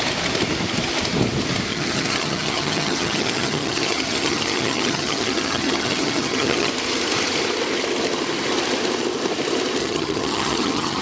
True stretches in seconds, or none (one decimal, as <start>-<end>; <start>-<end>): 0.0-1.7; 6.7-9.8